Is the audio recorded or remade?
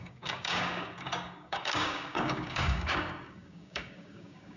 remade